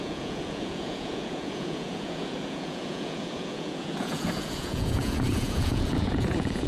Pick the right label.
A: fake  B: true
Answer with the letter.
A